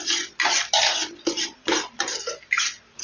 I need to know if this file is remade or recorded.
recorded